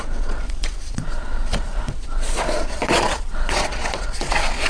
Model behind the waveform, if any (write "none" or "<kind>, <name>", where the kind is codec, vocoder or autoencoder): vocoder, Vocos